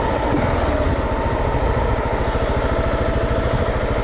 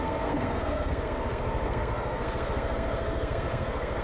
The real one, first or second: first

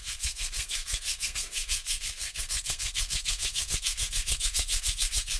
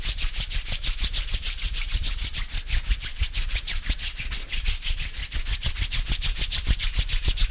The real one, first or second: second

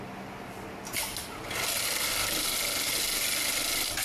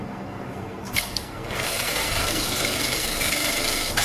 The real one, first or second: first